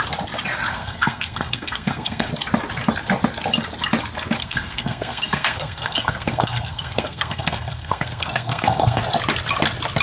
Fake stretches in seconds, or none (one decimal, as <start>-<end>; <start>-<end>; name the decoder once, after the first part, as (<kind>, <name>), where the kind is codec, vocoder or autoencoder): 0.7-2.3 (codec, SNAC); 4.4-9.0